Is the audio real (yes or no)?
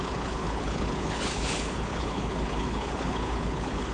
no